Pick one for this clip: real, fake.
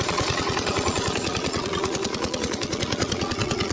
fake